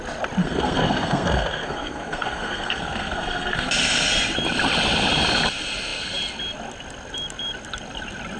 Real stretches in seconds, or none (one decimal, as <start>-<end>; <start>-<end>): 0.0-0.4; 3.7-8.4

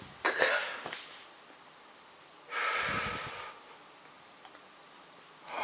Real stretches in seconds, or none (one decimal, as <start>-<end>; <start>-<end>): 0.0-5.6

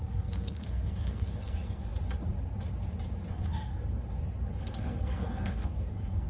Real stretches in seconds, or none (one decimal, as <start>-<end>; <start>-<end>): 1.9-3.3; 4.0-4.6

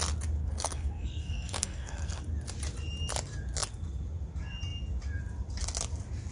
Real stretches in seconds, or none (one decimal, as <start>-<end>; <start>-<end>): 0.0-0.4; 2.2-6.3

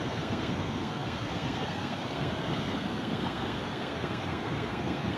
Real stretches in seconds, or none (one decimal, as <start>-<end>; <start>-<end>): none

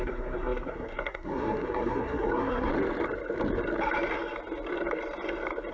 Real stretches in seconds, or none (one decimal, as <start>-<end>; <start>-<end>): 2.7-5.7

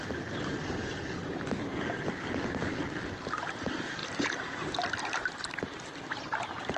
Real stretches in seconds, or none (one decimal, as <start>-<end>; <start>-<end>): 0.0-6.8